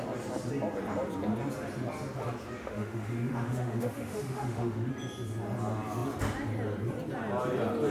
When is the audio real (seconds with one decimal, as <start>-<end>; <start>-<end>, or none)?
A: 0.0-2.6; 4.9-7.9